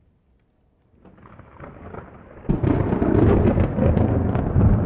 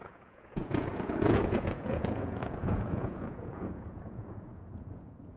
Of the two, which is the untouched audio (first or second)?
first